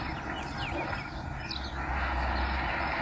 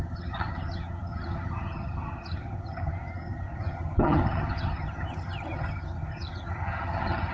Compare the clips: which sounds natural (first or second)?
first